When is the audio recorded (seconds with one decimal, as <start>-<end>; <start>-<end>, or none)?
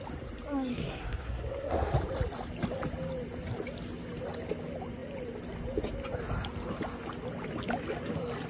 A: 0.0-0.7; 1.9-8.5